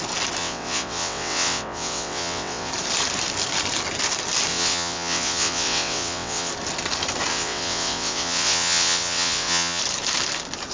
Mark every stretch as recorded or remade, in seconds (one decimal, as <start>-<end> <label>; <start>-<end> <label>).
0.0-0.4 recorded; 0.4-2.7 remade; 2.7-4.5 recorded; 4.5-6.5 remade; 6.5-7.3 recorded; 7.3-9.8 remade; 9.8-10.7 recorded